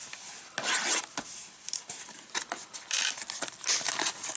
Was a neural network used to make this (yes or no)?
no